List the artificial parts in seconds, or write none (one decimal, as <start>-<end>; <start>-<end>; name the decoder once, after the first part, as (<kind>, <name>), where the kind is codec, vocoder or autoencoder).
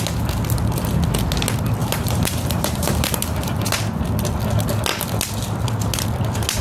1.8-4.0 (vocoder, BigVGAN v2)